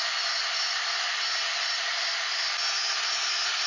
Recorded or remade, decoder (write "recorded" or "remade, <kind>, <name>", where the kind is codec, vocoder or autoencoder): recorded